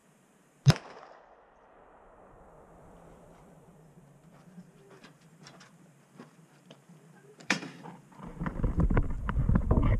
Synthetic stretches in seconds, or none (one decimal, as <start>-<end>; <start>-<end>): 0.0-2.4; 3.7-8.2